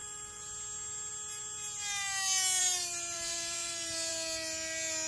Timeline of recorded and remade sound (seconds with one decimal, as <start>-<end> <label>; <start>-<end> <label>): 0.0-2.6 recorded; 2.6-4.1 remade; 4.1-5.1 recorded